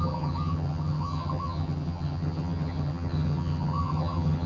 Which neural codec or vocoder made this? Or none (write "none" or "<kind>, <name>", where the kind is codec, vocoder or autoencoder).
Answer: vocoder, HiFi-GAN